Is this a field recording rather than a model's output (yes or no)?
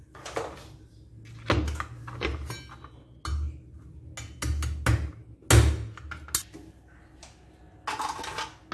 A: yes